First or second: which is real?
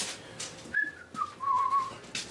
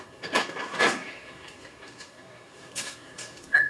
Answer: first